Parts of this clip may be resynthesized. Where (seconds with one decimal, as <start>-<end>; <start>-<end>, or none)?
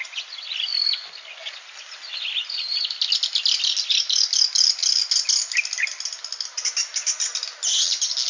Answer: none